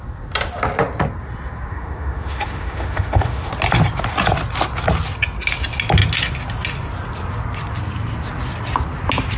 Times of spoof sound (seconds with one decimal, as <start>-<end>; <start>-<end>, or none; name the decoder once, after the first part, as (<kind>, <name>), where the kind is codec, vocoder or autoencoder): 1.7-3.5 (autoencoder, DAC-VAE)